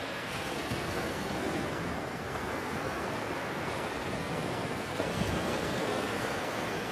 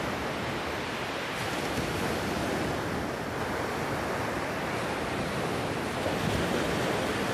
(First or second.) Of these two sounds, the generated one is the first